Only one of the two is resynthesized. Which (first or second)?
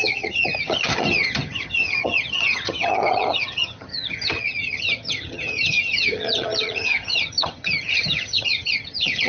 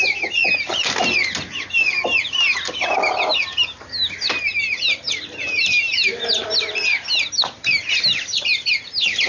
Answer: first